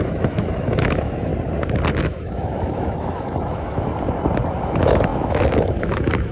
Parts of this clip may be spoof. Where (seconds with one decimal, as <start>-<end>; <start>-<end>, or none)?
0.0-1.3; 2.0-3.9; 4.6-6.3